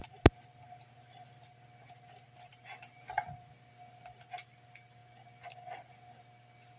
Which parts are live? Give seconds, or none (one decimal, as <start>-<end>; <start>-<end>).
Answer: 0.0-6.8